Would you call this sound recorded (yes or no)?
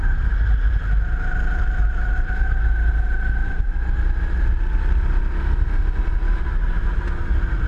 yes